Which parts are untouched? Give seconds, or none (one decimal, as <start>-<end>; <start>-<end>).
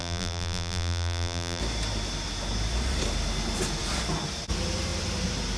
1.6-5.6